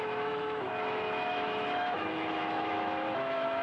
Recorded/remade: remade